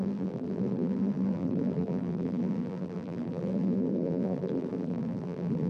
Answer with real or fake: fake